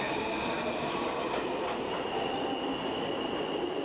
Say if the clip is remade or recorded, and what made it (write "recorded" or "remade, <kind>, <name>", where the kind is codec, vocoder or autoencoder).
recorded